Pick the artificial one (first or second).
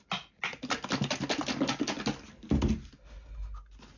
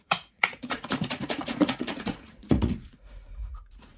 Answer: second